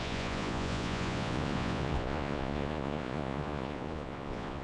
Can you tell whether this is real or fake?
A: fake